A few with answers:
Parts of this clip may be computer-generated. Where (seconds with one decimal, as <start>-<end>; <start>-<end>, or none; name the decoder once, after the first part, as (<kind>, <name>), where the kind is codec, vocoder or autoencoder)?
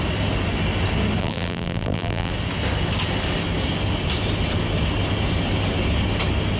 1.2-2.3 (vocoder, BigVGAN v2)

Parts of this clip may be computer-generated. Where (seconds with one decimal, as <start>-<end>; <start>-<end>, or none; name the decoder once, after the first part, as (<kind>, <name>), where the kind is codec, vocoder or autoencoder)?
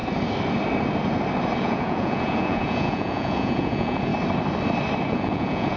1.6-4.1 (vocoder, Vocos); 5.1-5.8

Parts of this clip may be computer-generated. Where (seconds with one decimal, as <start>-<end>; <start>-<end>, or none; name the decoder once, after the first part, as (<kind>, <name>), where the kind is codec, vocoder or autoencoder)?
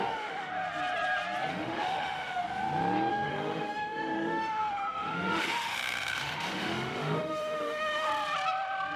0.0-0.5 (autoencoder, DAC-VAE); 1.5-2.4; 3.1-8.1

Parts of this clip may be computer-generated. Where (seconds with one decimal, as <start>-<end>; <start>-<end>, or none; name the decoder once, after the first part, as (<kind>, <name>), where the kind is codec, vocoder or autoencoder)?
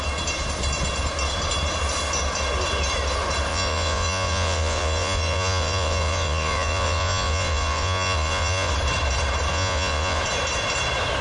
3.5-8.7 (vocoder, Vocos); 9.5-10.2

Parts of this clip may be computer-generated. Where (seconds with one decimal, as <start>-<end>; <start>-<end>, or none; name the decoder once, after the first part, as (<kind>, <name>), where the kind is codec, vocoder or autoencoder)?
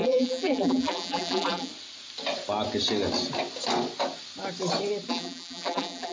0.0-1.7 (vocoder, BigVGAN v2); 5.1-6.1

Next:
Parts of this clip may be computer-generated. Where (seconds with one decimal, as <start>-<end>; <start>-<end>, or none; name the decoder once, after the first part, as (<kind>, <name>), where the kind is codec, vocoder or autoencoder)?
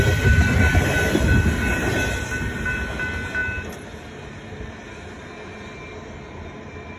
none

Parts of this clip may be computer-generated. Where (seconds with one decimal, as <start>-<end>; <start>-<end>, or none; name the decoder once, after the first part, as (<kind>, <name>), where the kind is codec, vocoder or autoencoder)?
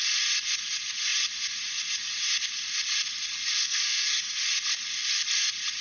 3.6-4.2 (codec, SNAC)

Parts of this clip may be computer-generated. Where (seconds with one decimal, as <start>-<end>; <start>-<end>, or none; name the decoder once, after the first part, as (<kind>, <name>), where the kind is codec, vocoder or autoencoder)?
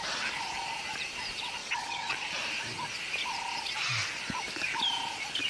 1.6-2.4 (vocoder, Vocos)